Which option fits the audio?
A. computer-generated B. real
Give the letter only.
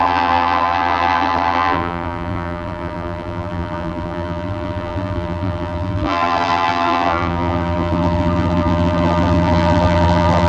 A